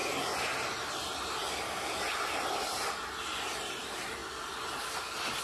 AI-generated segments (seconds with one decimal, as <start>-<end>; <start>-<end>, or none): none